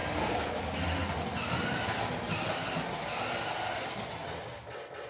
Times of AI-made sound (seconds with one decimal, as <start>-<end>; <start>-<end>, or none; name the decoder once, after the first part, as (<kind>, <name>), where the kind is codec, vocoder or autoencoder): none